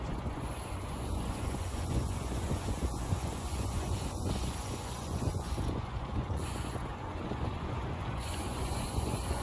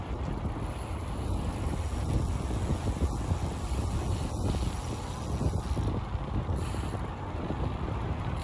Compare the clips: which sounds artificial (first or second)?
first